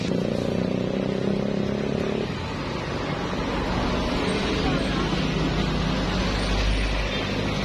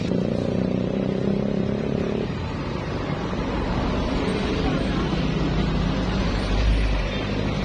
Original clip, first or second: first